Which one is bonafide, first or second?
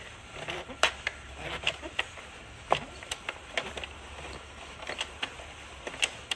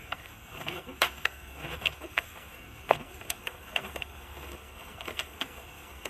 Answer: first